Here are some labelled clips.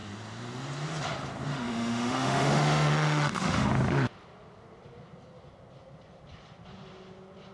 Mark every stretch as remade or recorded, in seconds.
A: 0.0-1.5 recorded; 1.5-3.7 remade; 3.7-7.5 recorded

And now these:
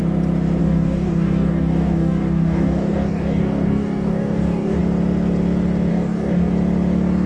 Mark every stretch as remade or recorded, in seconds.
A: 0.0-0.6 recorded; 0.6-4.8 remade; 4.8-5.9 recorded; 5.9-6.5 remade; 6.5-7.3 recorded

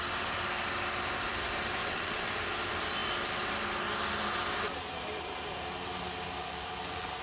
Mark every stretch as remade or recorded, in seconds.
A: 0.0-1.8 recorded; 1.8-2.3 remade; 2.3-7.2 recorded

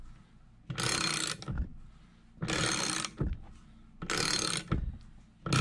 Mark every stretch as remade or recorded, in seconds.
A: 0.0-5.6 recorded

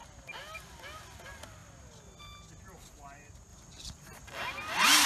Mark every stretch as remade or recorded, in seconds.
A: 0.0-3.5 recorded; 3.5-4.4 remade; 4.4-5.1 recorded